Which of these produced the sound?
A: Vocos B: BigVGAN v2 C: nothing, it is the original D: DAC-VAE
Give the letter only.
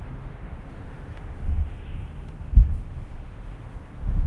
D